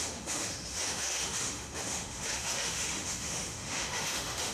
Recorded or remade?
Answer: remade